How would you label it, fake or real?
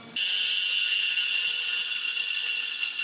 real